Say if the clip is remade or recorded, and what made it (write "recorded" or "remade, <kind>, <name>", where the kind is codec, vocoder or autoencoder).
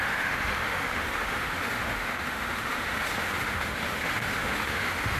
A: remade, autoencoder, DAC-VAE